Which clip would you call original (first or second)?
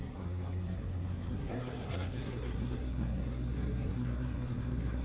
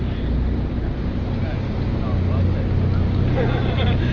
second